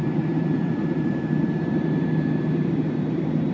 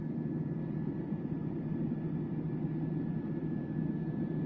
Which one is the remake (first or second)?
first